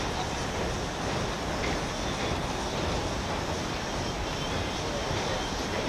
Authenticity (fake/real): real